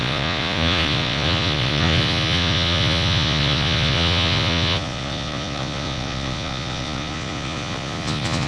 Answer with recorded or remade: remade